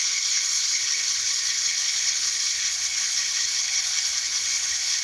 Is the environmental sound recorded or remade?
remade